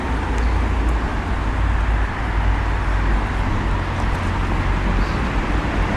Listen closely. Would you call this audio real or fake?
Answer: real